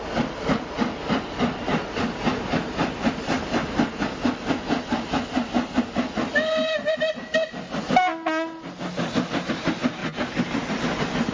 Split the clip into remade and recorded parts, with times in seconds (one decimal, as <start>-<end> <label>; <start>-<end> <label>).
0.0-11.3 recorded